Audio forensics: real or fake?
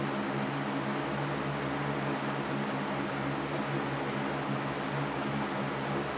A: real